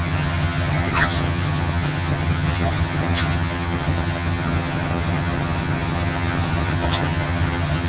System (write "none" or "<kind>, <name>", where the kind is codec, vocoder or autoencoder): vocoder, HiFi-GAN